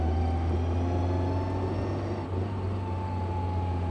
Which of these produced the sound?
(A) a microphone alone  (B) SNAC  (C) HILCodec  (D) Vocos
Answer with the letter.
A